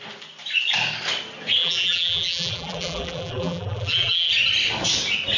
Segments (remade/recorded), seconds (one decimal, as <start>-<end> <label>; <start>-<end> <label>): 0.0-1.6 recorded; 1.6-4.3 remade; 4.3-5.4 recorded